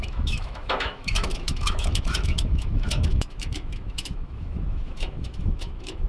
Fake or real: fake